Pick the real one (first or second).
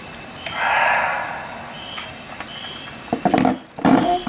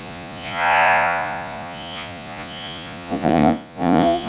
first